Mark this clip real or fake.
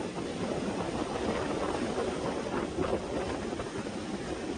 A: real